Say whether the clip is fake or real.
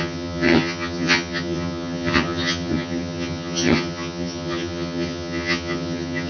fake